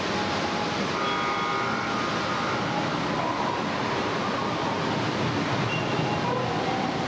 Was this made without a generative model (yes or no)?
yes